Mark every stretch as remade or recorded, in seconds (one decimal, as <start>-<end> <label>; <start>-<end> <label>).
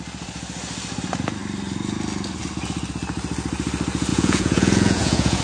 0.0-4.1 recorded; 4.1-5.4 remade